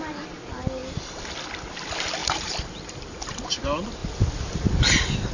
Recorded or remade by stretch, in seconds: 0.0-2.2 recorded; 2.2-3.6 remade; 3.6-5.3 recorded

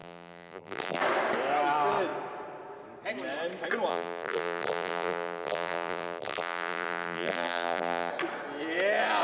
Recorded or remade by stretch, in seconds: 0.0-1.0 remade; 1.0-3.9 recorded; 3.9-8.1 remade; 8.1-9.2 recorded

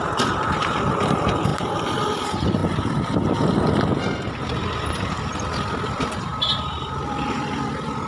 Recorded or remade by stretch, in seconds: 0.0-2.6 remade; 2.6-4.3 recorded; 4.3-6.3 remade; 6.3-7.0 recorded; 7.0-8.1 remade

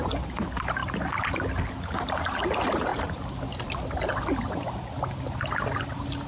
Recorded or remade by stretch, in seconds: 0.0-2.9 recorded; 2.9-4.2 remade; 4.2-6.3 recorded